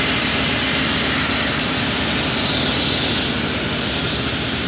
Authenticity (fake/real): real